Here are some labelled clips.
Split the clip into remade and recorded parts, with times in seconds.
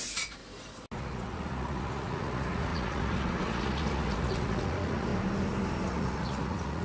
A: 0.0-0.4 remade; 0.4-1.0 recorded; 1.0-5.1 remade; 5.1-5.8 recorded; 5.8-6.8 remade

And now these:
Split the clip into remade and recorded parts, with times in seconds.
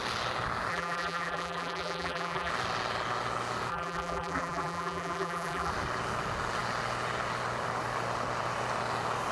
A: 0.0-0.7 recorded; 0.7-2.5 remade; 2.5-3.7 recorded; 3.7-5.7 remade; 5.7-9.3 recorded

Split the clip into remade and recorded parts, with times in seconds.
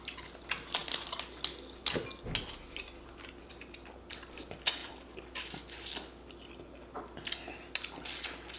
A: 0.0-8.6 recorded